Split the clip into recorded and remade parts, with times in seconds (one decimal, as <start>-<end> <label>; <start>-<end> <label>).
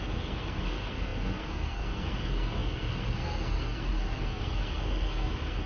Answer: 0.0-5.7 remade